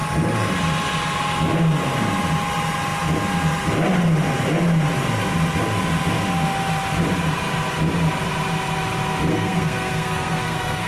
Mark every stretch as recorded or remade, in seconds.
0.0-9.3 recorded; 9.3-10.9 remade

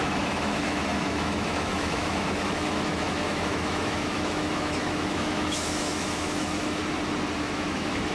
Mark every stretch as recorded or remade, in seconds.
0.0-6.8 remade; 6.8-7.4 recorded; 7.4-8.1 remade

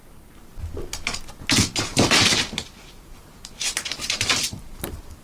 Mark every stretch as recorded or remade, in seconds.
0.0-1.9 recorded; 1.9-5.2 remade

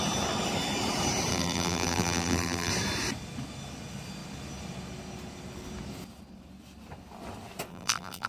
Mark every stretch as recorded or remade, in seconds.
0.0-1.3 recorded; 1.3-2.7 remade; 2.7-7.7 recorded; 7.7-8.3 remade

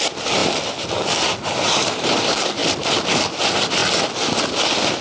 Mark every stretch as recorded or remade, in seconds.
0.0-5.0 recorded

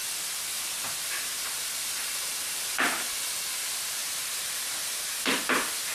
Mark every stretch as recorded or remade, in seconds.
0.0-4.0 recorded; 4.0-5.1 remade; 5.1-5.9 recorded